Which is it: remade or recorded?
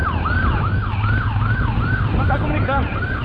recorded